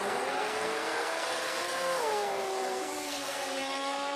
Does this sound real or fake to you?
fake